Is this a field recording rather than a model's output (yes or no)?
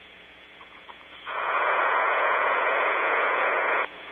no